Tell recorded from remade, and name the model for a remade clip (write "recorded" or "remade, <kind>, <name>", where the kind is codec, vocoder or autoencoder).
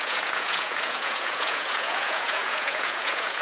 remade, vocoder, Vocos